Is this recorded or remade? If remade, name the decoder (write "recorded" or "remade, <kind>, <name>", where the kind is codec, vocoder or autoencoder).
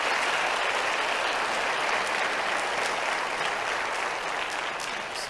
recorded